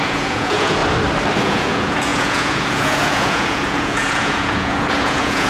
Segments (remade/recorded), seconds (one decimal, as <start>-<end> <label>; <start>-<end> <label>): 0.0-0.8 remade; 0.8-1.4 recorded; 1.4-5.5 remade